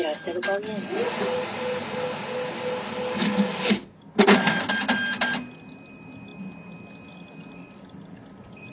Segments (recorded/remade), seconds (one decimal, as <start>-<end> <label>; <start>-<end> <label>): 0.0-8.7 recorded